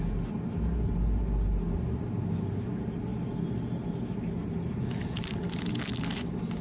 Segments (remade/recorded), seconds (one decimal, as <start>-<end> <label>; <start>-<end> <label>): 0.0-6.6 recorded